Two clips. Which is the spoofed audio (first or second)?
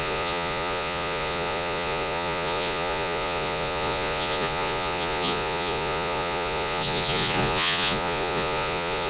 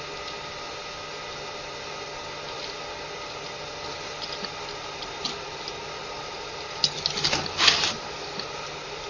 first